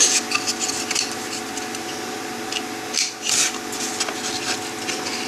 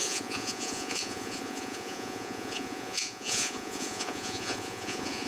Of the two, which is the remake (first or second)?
second